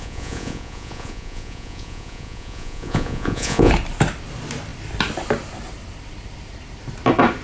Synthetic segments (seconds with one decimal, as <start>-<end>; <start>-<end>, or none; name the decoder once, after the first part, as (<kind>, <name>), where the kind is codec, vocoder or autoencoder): 0.0-3.7 (vocoder, Vocos)